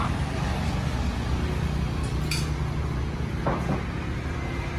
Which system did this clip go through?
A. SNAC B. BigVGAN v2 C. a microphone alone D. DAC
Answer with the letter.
C